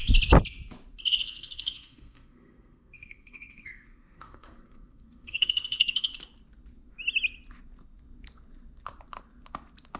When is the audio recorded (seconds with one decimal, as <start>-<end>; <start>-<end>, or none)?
0.0-1.1; 6.1-10.0